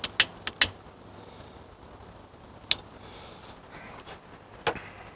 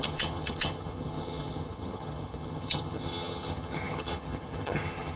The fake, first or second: second